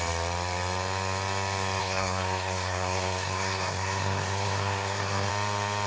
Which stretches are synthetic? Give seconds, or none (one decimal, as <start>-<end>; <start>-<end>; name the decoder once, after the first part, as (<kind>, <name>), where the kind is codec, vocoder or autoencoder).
1.8-5.3 (codec, SNAC)